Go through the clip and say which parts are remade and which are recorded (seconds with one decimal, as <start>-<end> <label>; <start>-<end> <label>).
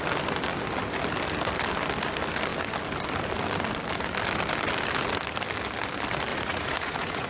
0.0-6.3 recorded; 6.3-7.3 remade